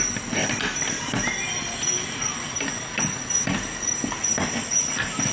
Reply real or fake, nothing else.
real